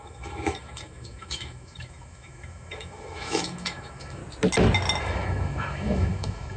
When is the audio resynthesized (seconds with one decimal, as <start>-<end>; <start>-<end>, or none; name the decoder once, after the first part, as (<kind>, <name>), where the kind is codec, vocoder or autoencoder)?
0.0-4.2 (autoencoder, DAC-VAE); 5.0-6.6